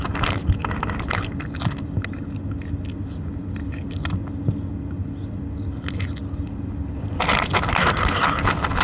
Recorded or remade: recorded